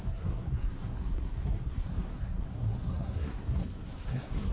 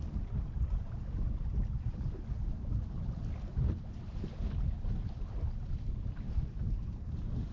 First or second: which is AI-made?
first